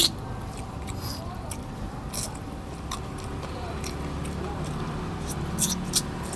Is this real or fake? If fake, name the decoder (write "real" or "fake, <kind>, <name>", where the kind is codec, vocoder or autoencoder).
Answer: real